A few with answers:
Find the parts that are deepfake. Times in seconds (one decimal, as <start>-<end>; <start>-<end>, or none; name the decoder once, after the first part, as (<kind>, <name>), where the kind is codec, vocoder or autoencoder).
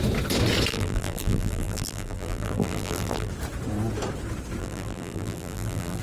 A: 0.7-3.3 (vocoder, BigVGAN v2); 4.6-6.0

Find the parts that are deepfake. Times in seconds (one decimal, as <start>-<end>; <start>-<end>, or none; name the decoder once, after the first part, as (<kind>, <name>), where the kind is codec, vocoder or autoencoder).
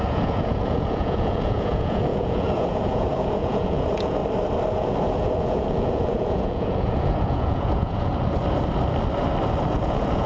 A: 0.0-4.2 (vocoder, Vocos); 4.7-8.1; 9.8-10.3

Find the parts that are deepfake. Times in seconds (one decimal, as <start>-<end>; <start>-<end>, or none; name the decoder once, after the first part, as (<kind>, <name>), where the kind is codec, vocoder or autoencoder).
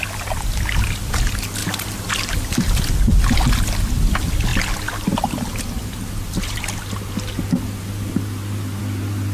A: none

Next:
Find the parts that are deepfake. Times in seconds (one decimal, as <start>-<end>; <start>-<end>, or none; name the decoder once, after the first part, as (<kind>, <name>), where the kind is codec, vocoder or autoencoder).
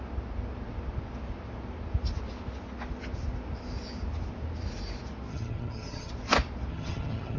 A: 5.3-6.1 (vocoder, HiFi-GAN); 6.7-7.4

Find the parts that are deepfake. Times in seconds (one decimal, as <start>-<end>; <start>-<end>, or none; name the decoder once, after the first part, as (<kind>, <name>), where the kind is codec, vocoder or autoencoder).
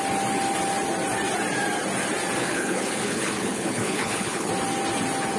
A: 2.4-4.5 (codec, HILCodec)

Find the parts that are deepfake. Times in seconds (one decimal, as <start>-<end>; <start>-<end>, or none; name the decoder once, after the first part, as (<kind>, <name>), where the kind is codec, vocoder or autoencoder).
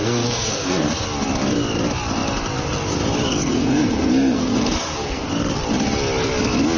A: 0.0-0.9 (codec, SNAC); 3.3-5.3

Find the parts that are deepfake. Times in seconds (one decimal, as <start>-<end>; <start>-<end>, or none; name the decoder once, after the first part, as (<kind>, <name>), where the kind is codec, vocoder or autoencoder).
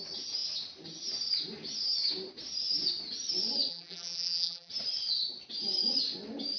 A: 3.7-4.7 (vocoder, BigVGAN v2)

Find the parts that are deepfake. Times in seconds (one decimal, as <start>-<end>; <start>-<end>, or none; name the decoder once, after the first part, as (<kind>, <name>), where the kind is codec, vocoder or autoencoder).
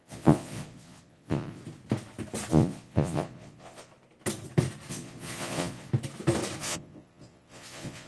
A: 0.0-1.6 (vocoder, Vocos); 2.5-3.9; 4.9-5.9; 6.6-8.1